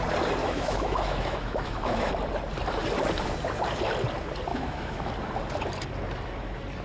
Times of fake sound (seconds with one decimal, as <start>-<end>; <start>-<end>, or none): 0.4-2.1; 4.5-5.1